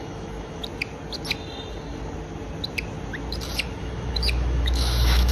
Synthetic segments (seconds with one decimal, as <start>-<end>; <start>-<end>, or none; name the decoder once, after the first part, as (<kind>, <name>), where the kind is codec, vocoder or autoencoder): 0.0-0.6 (autoencoder, DAC-VAE); 3.8-5.3

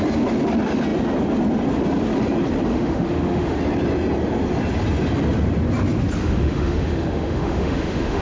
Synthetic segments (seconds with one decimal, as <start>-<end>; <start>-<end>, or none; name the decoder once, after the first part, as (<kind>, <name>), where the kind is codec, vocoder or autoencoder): 2.7-3.6 (autoencoder, DAC-VAE); 6.2-8.2

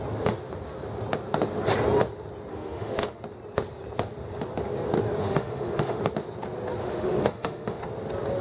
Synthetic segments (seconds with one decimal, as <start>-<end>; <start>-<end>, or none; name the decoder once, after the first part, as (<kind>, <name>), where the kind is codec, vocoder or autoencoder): 2.5-3.2 (autoencoder, DAC-VAE); 5.2-6.0; 6.8-7.8

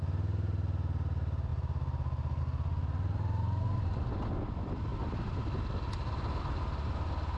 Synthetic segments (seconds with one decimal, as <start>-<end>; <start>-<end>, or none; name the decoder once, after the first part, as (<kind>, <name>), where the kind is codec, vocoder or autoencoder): none

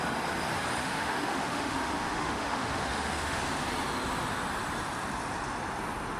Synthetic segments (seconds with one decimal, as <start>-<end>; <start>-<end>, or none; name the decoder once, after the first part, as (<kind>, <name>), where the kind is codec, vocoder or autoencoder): 0.8-3.4 (autoencoder, DAC-VAE)

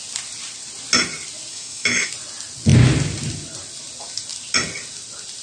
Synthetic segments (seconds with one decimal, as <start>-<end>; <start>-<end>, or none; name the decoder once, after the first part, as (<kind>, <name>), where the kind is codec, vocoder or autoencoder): 1.5-2.1 (autoencoder, DAC-VAE)

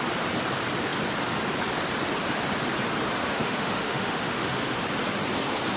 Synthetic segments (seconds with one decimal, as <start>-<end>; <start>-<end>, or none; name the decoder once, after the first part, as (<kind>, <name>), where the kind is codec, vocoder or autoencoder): 3.2-4.8 (autoencoder, DAC-VAE)

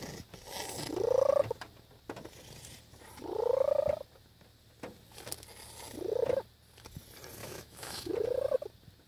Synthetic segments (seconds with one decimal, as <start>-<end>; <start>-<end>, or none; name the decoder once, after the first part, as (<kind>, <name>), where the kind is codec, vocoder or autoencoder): 7.4-8.1 (autoencoder, DAC-VAE)